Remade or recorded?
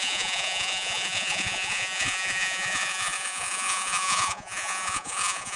remade